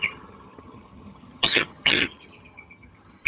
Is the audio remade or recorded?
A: remade